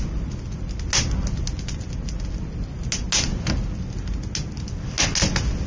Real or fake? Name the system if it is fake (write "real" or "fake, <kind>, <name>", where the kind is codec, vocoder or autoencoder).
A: real